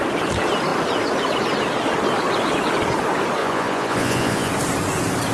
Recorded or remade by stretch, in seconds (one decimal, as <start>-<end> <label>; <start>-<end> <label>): 0.0-3.4 recorded; 3.4-4.5 remade; 4.5-5.3 recorded